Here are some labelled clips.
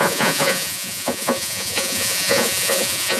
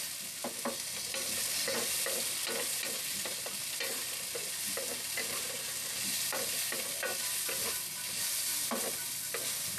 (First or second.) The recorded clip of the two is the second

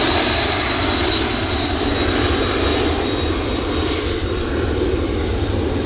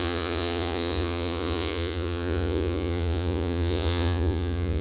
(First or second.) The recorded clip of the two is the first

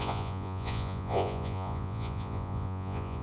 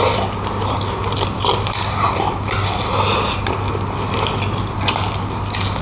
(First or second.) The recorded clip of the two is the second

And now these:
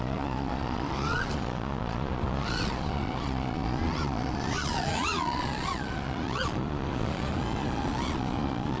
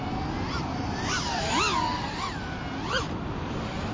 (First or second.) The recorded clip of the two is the second